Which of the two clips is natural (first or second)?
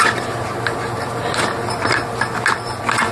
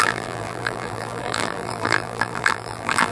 first